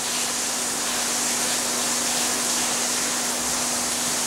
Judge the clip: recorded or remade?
recorded